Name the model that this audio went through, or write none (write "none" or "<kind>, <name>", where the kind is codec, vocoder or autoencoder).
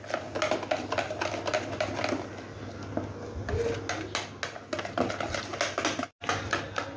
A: none